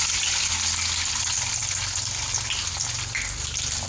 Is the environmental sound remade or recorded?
recorded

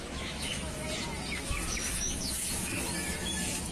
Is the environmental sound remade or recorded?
remade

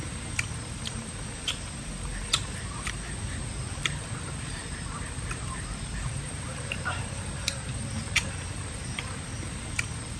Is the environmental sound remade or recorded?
remade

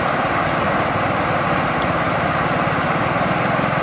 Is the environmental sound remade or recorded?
recorded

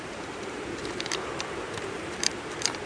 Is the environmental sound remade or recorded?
remade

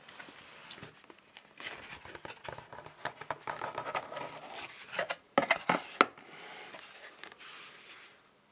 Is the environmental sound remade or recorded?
recorded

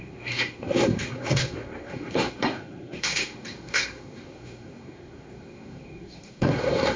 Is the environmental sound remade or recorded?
remade